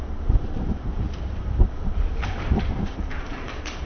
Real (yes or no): no